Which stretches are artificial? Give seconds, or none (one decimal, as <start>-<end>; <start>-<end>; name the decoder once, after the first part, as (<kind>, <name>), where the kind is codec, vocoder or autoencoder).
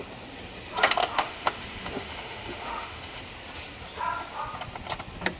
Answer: 1.0-3.2 (autoencoder, DAC-VAE)